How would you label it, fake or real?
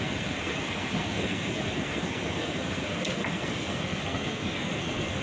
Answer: fake